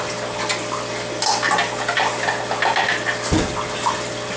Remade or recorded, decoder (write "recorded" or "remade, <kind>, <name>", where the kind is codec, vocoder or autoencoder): recorded